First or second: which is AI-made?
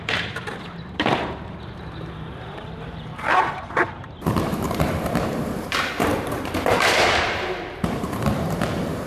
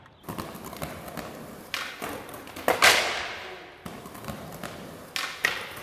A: first